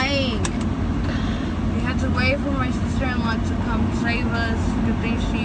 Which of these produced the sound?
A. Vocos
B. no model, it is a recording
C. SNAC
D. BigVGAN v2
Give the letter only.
B